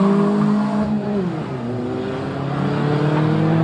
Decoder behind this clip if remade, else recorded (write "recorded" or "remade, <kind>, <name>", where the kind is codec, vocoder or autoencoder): recorded